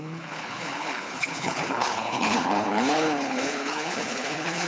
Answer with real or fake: fake